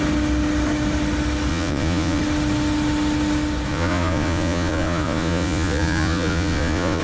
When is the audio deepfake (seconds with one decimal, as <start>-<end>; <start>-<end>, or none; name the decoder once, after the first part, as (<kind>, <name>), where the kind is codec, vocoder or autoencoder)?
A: 1.5-2.2 (vocoder, Vocos); 3.7-7.0